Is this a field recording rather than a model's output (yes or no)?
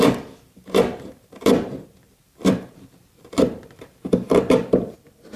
no